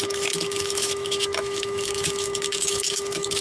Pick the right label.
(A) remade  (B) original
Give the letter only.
A